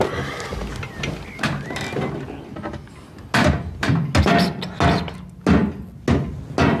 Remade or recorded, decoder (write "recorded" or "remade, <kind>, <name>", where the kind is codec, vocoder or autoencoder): recorded